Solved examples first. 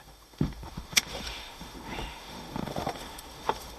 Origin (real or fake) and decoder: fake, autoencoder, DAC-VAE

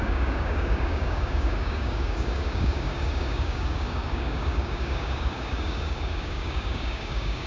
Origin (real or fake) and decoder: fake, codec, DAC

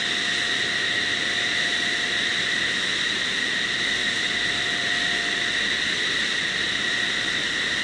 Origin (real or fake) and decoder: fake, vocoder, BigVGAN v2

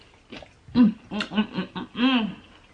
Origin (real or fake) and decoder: real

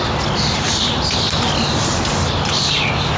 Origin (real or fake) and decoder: real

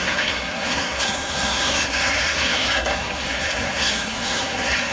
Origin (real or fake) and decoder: fake, codec, SNAC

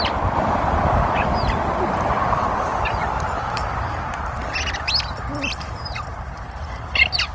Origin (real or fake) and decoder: real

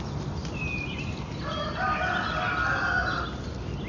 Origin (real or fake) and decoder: real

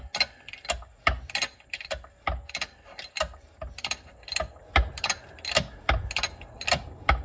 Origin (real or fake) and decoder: real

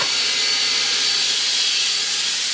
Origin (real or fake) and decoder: real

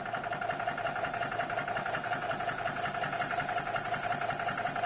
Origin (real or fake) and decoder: real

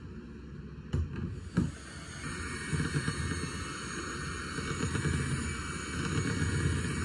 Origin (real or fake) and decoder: real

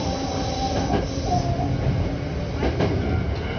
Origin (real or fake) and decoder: real